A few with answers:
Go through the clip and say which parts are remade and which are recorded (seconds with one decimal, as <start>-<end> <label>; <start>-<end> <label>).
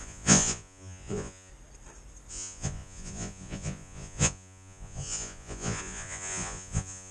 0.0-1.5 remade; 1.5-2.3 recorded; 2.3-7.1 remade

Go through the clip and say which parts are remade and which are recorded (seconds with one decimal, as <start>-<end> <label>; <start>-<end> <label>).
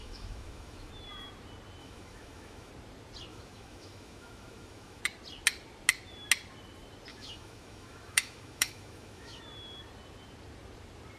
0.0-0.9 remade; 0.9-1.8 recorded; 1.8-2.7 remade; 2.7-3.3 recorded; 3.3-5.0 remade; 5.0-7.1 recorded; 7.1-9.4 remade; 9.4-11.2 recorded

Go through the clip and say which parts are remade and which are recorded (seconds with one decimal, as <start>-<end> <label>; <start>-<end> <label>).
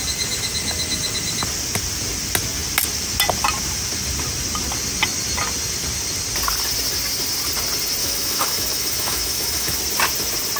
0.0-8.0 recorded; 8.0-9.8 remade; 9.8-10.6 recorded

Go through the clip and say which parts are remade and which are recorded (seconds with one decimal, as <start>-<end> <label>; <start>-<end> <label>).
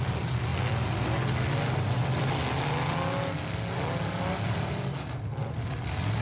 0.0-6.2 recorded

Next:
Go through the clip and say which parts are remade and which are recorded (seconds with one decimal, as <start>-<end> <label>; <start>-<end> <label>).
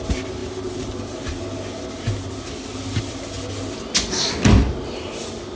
0.0-5.6 recorded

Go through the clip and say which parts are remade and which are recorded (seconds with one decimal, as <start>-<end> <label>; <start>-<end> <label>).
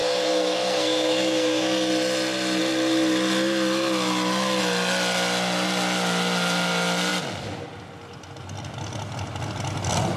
0.0-1.9 remade; 1.9-10.2 recorded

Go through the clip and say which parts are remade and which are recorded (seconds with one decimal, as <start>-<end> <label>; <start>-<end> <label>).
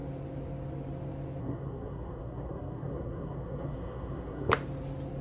0.0-1.4 recorded; 1.4-4.5 remade; 4.5-5.2 recorded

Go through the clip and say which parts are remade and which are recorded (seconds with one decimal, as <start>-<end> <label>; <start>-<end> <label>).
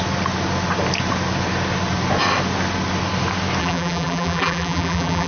0.0-3.6 recorded; 3.6-5.3 remade